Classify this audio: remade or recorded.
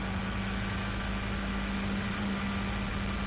recorded